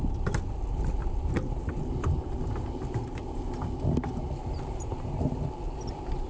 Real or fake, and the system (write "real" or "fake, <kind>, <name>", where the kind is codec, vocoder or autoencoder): real